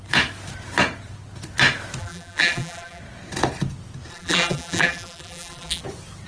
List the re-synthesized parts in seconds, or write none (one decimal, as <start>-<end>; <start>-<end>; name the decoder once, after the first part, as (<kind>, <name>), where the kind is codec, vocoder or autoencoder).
2.0-3.0 (vocoder, BigVGAN v2); 4.1-5.8